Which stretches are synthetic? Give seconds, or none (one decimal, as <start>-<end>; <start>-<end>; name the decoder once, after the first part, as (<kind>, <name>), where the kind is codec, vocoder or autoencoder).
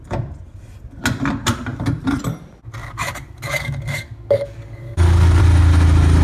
2.8-5.4 (codec, DAC)